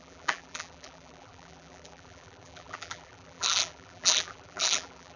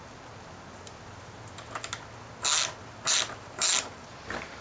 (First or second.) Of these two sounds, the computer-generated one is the first